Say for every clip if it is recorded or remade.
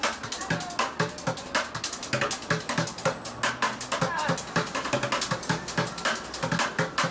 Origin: recorded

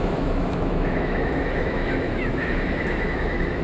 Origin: remade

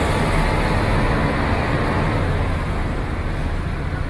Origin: recorded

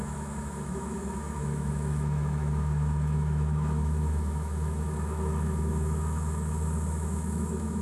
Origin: remade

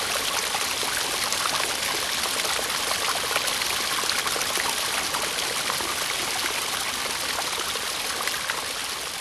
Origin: recorded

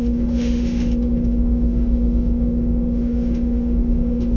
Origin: remade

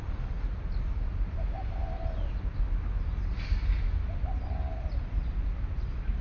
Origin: recorded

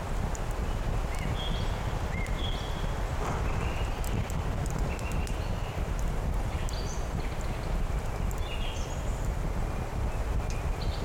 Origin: recorded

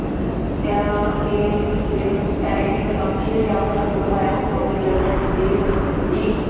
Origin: recorded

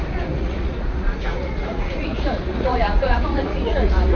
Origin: remade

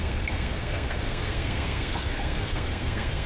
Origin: remade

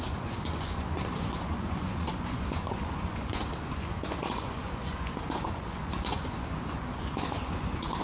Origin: remade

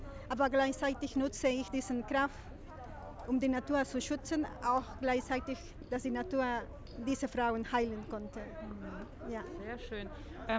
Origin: recorded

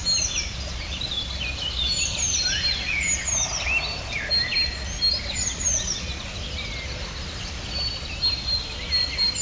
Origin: recorded